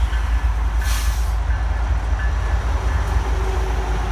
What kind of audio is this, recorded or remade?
recorded